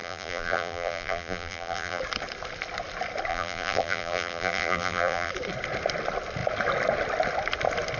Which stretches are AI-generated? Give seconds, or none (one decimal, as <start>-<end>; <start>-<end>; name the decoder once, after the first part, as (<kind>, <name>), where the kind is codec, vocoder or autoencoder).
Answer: 0.0-2.0 (vocoder, BigVGAN v2); 3.3-5.3